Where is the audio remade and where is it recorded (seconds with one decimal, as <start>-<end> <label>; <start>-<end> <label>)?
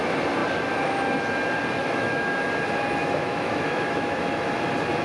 0.0-1.8 recorded; 1.8-2.4 remade; 2.4-3.0 recorded; 3.0-4.2 remade; 4.2-5.0 recorded